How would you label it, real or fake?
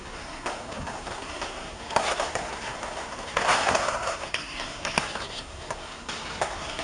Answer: fake